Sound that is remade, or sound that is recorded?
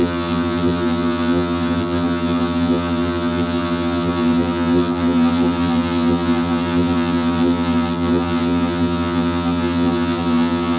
remade